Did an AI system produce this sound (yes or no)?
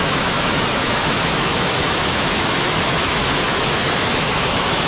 yes